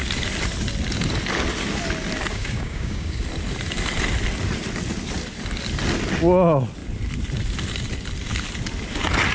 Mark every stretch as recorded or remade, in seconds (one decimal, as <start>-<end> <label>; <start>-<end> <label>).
0.0-2.3 recorded; 2.3-3.2 remade; 3.2-9.3 recorded